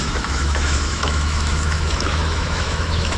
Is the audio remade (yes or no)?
yes